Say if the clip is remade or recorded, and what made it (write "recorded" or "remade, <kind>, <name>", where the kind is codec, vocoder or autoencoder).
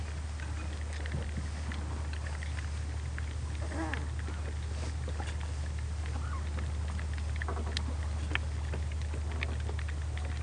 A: recorded